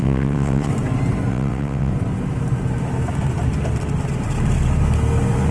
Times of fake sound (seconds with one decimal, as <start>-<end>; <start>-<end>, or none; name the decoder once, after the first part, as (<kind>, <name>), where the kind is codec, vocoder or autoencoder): 0.0-0.7 (vocoder, WaveNeXt); 1.3-1.9